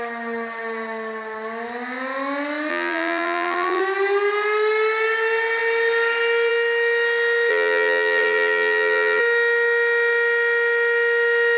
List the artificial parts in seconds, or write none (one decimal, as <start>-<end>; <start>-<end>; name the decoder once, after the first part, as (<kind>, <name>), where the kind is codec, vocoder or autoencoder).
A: 2.7-3.8 (vocoder, BigVGAN v2); 7.5-9.2